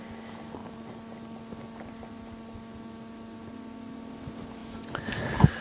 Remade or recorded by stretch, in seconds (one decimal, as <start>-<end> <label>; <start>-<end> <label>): 0.0-5.6 recorded